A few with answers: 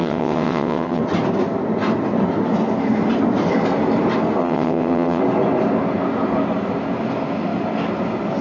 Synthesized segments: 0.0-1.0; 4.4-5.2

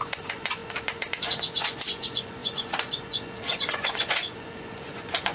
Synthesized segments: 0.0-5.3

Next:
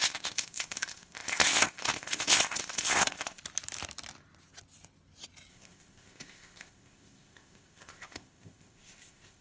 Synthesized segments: 0.0-3.4; 5.5-9.4

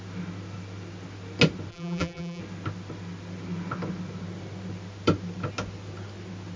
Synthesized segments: 1.7-2.4